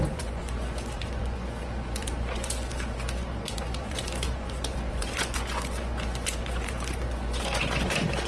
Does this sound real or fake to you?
fake